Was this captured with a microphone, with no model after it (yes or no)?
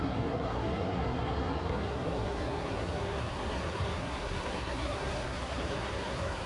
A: no